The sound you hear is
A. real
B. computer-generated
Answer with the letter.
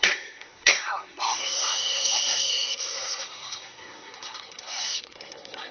B